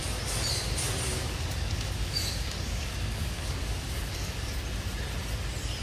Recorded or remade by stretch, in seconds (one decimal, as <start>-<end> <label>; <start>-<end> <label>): 0.0-1.1 recorded; 1.1-4.6 remade; 4.6-5.8 recorded